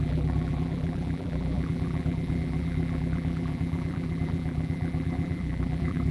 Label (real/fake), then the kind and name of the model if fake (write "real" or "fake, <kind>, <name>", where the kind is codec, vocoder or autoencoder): fake, vocoder, BigVGAN v2